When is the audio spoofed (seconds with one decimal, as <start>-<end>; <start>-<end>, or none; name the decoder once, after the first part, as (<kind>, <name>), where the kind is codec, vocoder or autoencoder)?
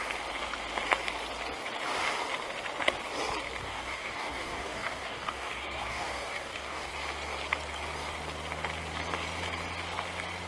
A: 3.6-6.9 (codec, DAC)